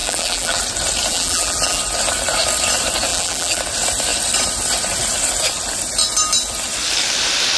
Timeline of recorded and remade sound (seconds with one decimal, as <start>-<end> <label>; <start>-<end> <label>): 0.0-0.6 remade; 0.6-1.1 recorded; 1.1-1.8 remade; 1.8-3.1 recorded; 3.1-3.6 remade; 3.6-7.6 recorded